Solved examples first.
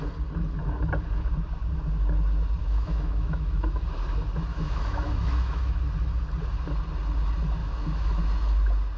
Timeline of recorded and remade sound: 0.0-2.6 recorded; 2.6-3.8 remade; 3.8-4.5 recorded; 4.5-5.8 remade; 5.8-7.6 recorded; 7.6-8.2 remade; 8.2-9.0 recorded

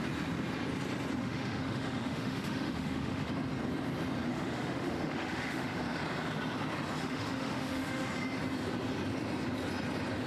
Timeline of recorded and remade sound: 0.0-1.2 recorded; 1.2-3.3 remade; 3.3-4.3 recorded; 4.3-5.8 remade; 5.8-7.0 recorded; 7.0-8.1 remade; 8.1-10.3 recorded

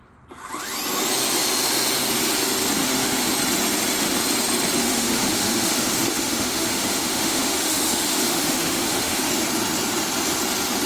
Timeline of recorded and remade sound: 0.0-2.8 recorded; 2.8-3.3 remade; 3.3-4.8 recorded; 4.8-9.3 remade; 9.3-10.9 recorded

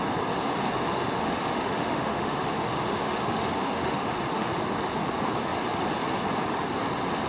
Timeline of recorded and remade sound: 0.0-0.9 recorded; 0.9-4.5 remade; 4.5-7.3 recorded

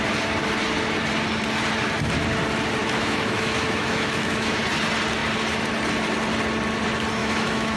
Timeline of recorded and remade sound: 0.0-2.8 recorded; 2.8-4.6 remade; 4.6-7.2 recorded; 7.2-7.8 remade

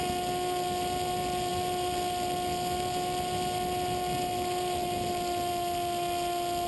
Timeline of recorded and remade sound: 0.0-6.7 recorded

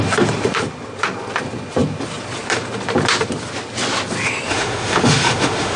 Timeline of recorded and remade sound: 0.0-4.5 recorded; 4.5-5.8 remade

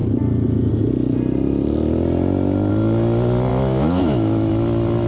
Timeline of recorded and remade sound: 0.0-3.5 recorded; 3.5-4.5 remade; 4.5-5.1 recorded